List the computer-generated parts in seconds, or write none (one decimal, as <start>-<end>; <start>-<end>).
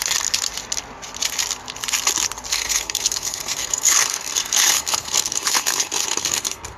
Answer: 2.5-6.8